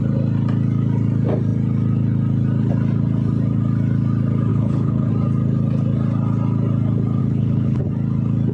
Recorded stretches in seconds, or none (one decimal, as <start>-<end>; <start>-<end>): 0.0-4.5; 5.1-7.2; 7.8-8.5